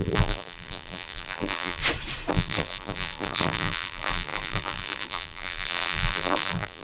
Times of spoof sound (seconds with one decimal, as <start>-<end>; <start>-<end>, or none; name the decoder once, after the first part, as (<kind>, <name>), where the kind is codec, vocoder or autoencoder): 0.0-1.8 (vocoder, BigVGAN v2); 2.3-6.8